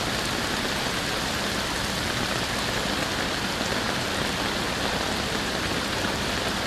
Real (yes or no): yes